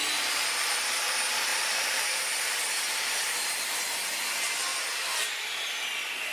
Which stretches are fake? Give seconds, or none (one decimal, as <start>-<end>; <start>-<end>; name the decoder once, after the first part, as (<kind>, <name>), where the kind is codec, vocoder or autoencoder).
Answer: 1.5-3.6 (vocoder, BigVGAN v2); 4.7-5.3